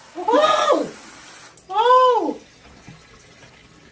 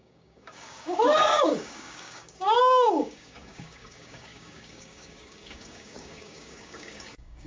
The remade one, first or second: second